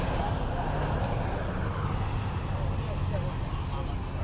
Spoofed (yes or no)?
no